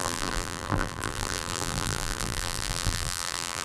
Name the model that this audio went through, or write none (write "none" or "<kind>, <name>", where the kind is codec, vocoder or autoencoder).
vocoder, BigVGAN v2